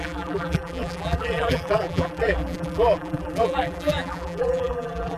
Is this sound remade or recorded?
remade